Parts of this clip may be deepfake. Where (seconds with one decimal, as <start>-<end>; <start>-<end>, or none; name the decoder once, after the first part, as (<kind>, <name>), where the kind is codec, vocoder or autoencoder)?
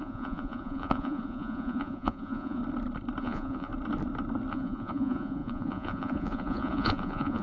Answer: 0.0-2.6 (vocoder, Vocos); 3.2-3.7; 4.5-7.4